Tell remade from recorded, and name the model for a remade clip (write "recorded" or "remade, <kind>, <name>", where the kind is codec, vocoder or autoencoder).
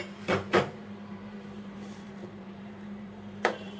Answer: remade, vocoder, BigVGAN v2